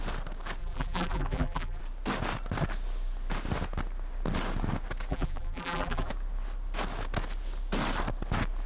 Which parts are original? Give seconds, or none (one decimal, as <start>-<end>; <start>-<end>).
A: 0.0-0.6; 1.8-5.1; 6.1-8.7